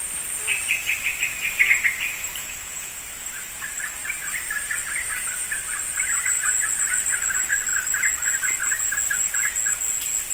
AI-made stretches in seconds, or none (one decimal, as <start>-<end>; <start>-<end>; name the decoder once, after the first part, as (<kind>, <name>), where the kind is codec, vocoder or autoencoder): 2.4-3.0 (vocoder, Vocos)